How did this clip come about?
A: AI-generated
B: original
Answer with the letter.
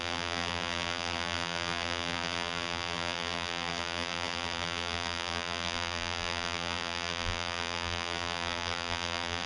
A